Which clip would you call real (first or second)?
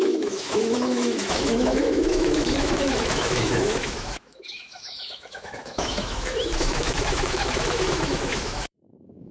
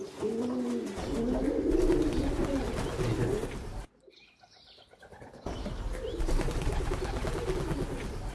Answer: second